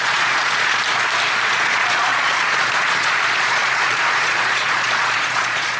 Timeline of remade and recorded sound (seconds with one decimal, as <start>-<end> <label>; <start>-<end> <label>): 0.0-0.8 remade; 0.8-1.5 recorded; 1.5-5.8 remade